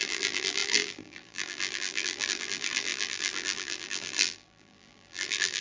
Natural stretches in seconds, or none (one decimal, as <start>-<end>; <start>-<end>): none